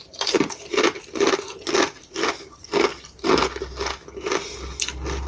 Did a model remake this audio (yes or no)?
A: no